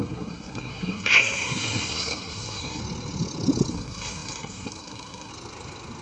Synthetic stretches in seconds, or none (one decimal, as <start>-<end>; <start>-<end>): 0.0-2.8; 3.7-5.3